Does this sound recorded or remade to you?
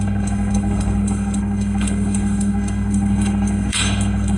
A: remade